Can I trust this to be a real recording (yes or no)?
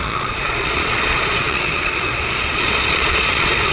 no